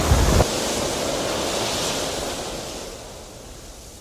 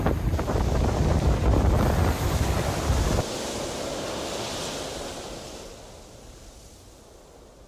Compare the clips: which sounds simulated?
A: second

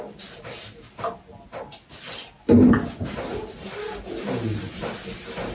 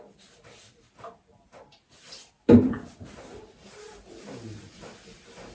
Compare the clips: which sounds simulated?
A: second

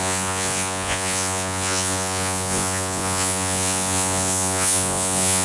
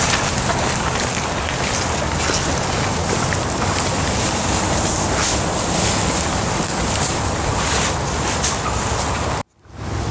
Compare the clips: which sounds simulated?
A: first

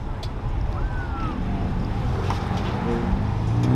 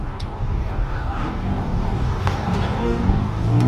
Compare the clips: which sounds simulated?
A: second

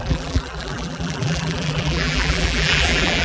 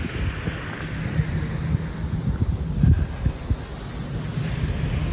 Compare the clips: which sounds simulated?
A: first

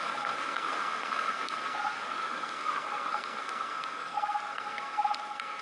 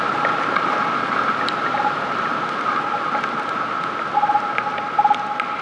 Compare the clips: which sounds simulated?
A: first